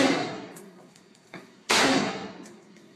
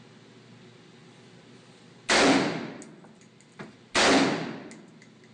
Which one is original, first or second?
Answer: second